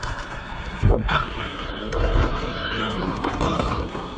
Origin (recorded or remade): remade